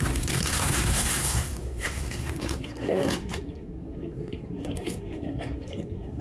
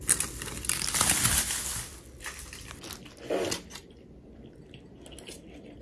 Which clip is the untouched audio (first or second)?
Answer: second